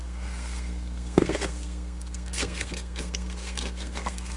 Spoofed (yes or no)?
yes